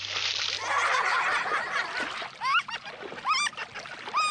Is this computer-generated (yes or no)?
no